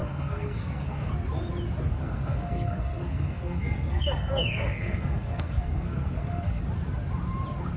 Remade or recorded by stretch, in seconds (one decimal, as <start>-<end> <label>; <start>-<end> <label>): 0.0-1.1 remade; 1.1-1.9 recorded; 1.9-6.6 remade; 6.6-7.8 recorded